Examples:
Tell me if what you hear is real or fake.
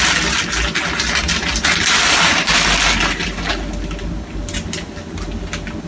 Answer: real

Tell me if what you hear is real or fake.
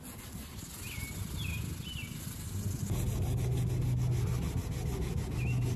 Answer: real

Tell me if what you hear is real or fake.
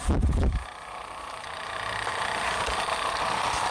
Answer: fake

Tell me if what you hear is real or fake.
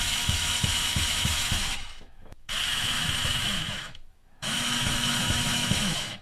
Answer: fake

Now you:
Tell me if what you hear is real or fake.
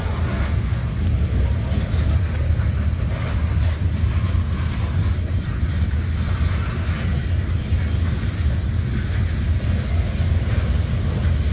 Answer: real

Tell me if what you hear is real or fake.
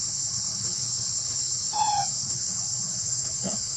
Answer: fake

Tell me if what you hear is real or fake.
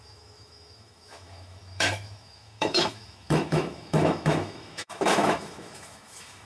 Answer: fake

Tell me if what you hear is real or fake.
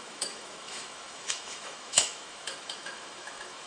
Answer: fake